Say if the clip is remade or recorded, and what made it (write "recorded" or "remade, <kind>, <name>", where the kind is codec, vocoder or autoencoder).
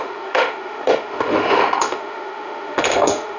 remade, autoencoder, DAC-VAE